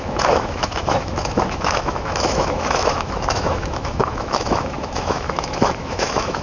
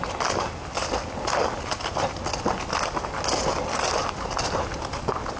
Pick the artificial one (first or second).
first